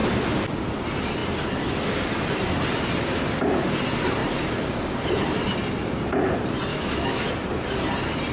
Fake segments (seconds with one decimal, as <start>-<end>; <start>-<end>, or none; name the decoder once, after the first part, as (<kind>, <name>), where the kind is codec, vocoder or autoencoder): 6.7-7.3 (autoencoder, DAC-VAE)